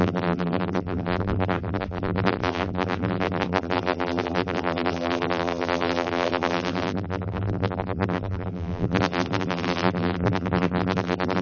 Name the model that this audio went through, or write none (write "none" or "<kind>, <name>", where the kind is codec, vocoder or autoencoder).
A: vocoder, BigVGAN v2